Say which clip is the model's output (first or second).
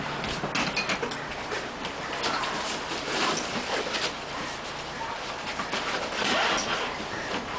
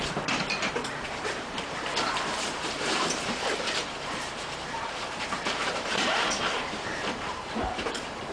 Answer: second